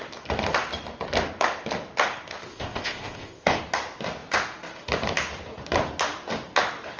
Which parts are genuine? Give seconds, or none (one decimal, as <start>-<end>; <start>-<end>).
0.0-2.5; 3.6-7.0